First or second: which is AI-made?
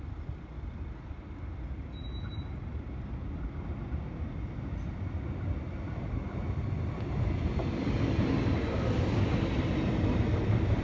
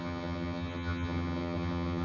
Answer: second